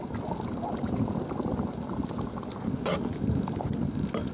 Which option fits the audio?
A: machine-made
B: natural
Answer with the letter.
B